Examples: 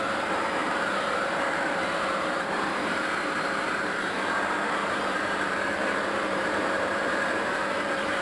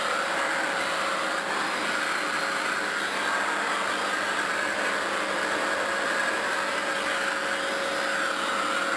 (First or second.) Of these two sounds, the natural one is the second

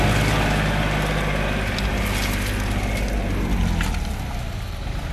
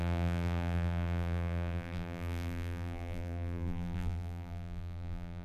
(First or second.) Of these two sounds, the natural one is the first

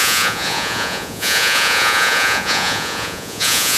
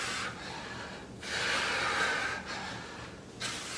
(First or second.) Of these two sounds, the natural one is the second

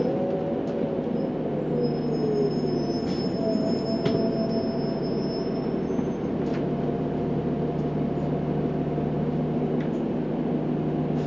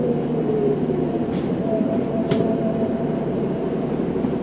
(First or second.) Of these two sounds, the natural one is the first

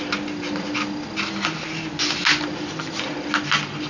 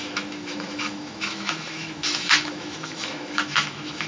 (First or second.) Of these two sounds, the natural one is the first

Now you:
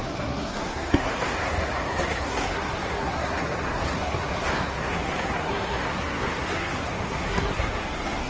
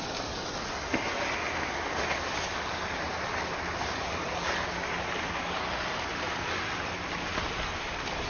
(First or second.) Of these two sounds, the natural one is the second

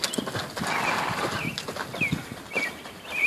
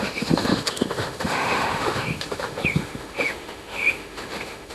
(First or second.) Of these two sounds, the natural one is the first